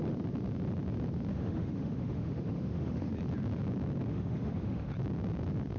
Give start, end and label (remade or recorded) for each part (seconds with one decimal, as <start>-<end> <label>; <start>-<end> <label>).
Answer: 0.0-1.3 recorded; 1.3-3.1 remade; 3.1-4.1 recorded; 4.1-4.9 remade; 4.9-5.8 recorded